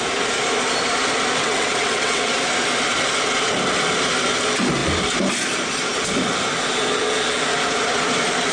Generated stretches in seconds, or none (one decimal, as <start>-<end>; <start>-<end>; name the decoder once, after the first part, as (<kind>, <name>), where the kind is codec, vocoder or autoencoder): 1.4-2.3 (vocoder, WaveNeXt)